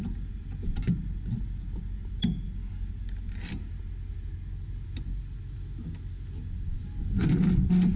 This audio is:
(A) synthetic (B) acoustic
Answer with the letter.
B